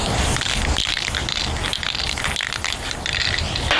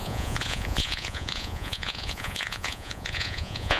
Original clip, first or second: first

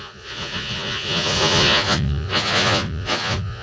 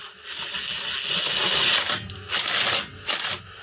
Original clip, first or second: second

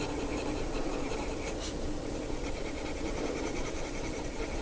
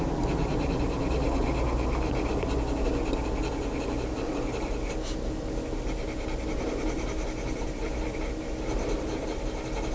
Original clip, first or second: second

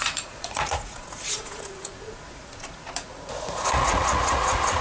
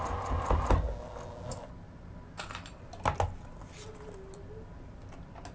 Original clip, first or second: second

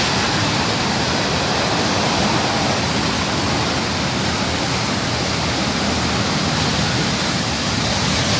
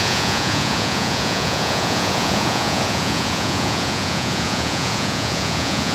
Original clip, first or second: first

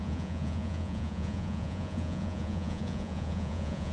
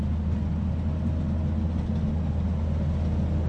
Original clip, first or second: second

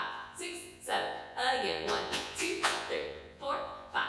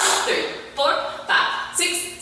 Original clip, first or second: second